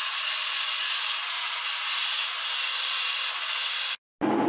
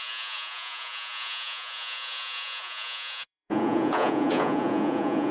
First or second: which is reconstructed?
second